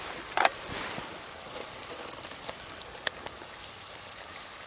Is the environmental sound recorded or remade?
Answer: remade